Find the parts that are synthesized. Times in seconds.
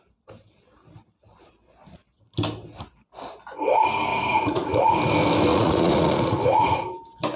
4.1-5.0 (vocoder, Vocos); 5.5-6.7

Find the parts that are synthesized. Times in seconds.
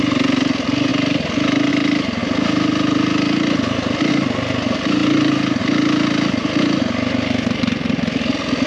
none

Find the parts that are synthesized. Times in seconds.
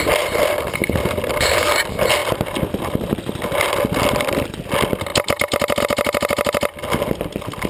none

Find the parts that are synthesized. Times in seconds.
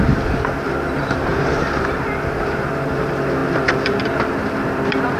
0.0-1.3 (vocoder, BigVGAN v2); 1.8-5.2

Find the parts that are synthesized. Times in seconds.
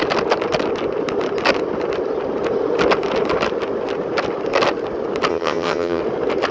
5.3-6.0 (vocoder, HiFi-GAN)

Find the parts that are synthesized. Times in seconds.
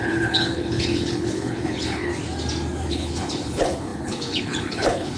0.0-2.1 (codec, HILCodec); 2.9-5.2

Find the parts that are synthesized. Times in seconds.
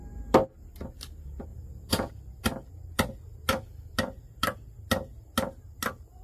1.5-2.1 (vocoder, Vocos)